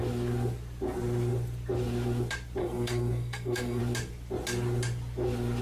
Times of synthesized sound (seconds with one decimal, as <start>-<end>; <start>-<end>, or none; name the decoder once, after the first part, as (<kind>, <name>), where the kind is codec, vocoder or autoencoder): 2.6-3.8 (codec, SNAC)